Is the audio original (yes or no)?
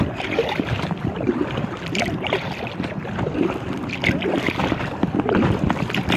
yes